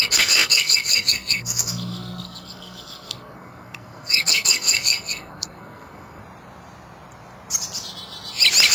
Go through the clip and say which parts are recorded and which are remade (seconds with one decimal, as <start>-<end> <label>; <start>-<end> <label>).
0.0-6.2 remade; 6.2-8.7 recorded